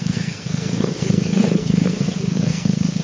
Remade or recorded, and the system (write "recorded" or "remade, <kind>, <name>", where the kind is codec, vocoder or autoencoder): remade, codec, SNAC